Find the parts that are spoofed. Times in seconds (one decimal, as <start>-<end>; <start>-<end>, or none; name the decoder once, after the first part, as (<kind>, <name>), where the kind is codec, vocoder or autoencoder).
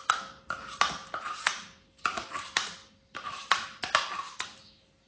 none